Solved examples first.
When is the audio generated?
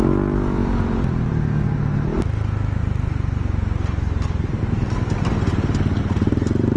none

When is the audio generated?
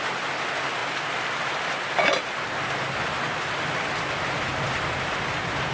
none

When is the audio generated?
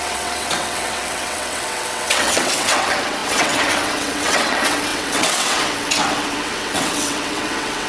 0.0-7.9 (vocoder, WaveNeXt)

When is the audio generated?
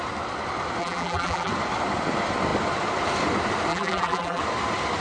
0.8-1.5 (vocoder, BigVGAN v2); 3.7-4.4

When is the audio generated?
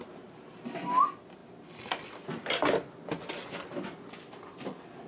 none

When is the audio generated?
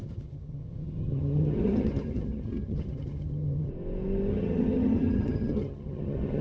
0.0-3.7 (vocoder, HiFi-GAN); 4.3-6.4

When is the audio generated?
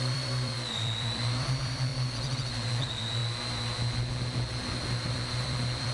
0.0-1.9 (vocoder, BigVGAN v2); 2.7-3.2; 5.1-5.9